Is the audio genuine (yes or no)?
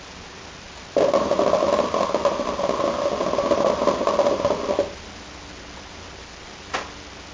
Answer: yes